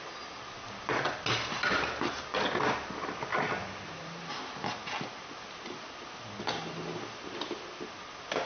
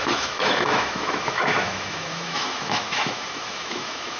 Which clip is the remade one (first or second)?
second